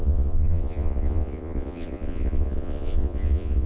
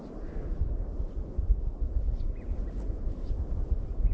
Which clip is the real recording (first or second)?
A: second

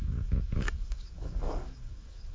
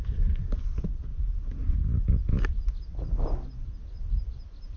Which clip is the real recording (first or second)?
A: second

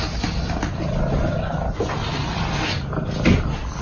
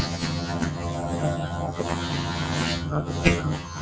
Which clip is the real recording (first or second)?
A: first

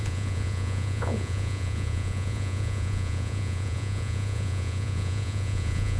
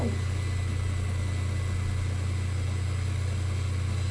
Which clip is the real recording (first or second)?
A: second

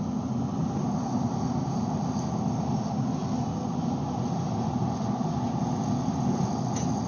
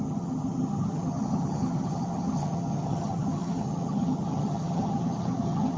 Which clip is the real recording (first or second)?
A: first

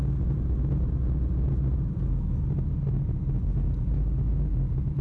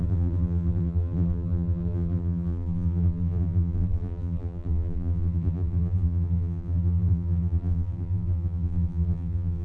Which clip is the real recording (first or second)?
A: first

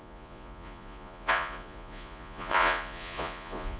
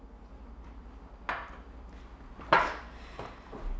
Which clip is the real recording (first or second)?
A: second